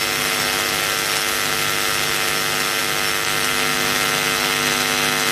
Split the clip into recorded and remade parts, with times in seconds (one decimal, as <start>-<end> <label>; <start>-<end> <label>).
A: 0.0-5.3 recorded